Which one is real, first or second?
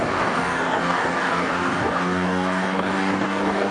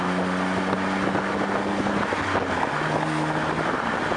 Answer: second